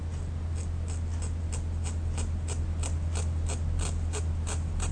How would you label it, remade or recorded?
recorded